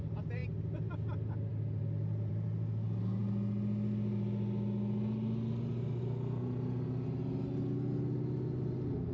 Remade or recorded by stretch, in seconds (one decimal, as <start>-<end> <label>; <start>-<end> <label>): 0.0-9.1 recorded

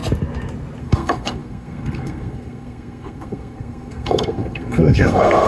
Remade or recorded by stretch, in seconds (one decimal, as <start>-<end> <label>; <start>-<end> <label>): 0.0-0.8 recorded; 0.8-5.5 remade

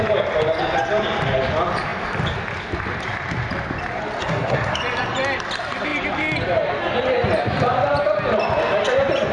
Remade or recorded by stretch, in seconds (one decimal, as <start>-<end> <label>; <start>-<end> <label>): 0.0-4.2 recorded; 4.2-4.8 remade; 4.8-9.3 recorded

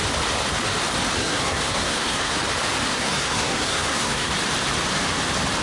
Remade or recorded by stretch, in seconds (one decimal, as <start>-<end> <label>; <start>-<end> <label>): 0.0-1.2 recorded; 1.2-2.4 remade; 2.4-2.9 recorded; 2.9-4.3 remade; 4.3-5.6 recorded

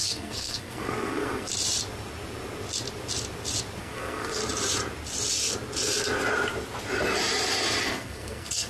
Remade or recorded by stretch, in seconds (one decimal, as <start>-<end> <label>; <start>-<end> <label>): 0.0-1.5 remade; 1.5-3.8 recorded; 3.8-4.4 remade; 4.4-7.8 recorded; 7.8-8.7 remade